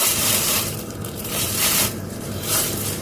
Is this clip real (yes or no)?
no